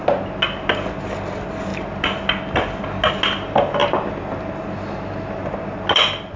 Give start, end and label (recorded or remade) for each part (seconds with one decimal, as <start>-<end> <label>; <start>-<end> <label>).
0.0-6.4 recorded